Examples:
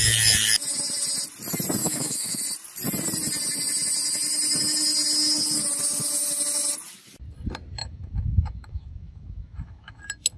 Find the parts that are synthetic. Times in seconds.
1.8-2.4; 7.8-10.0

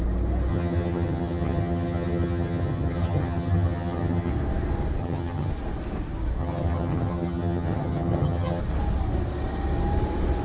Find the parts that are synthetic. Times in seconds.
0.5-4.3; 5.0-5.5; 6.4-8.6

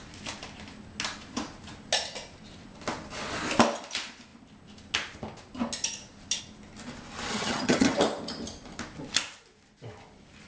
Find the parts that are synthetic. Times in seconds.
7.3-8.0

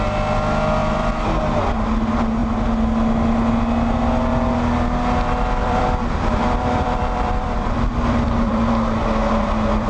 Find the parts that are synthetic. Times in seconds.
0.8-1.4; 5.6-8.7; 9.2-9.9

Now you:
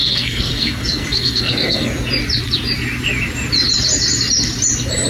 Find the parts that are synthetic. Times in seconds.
0.0-1.9

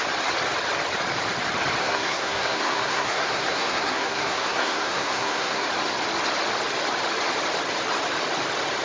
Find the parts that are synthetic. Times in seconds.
1.8-5.7

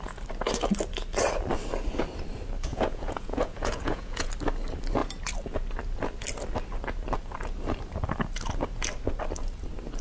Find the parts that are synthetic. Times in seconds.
2.7-4.3